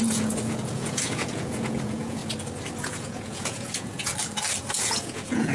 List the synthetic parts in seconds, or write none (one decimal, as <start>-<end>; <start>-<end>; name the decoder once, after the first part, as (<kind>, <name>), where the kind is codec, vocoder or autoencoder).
0.0-2.2 (vocoder, Vocos); 2.8-4.1; 4.6-5.5